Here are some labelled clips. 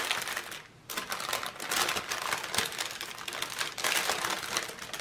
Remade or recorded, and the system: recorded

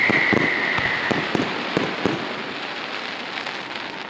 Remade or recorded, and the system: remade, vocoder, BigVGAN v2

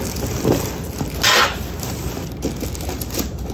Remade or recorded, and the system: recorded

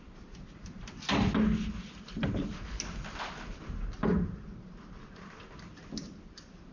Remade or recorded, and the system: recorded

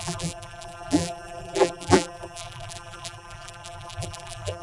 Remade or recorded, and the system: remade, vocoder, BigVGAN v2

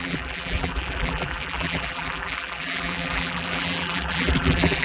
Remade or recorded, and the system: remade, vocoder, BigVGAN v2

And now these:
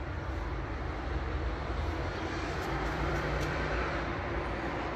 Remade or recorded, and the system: remade, vocoder, BigVGAN v2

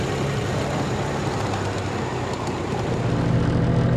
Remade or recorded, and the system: recorded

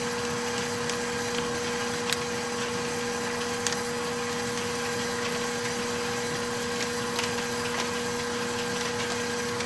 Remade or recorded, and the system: recorded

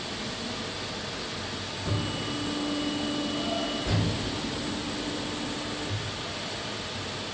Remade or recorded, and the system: recorded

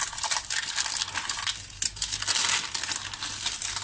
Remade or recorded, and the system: recorded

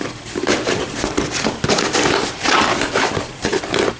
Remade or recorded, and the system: remade, vocoder, BigVGAN v2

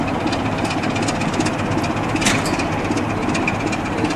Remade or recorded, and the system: recorded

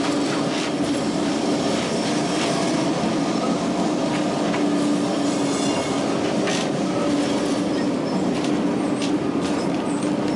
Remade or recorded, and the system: recorded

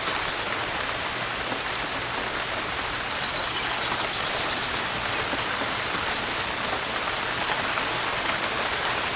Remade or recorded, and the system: recorded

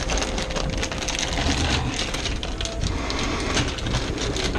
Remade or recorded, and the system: recorded